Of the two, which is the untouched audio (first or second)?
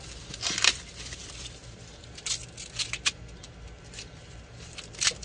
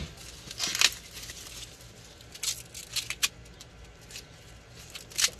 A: second